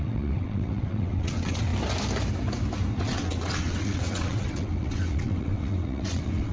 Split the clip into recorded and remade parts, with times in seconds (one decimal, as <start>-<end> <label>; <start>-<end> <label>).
0.0-1.7 remade; 1.7-3.0 recorded; 3.0-6.5 remade